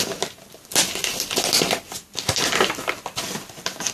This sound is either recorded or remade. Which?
recorded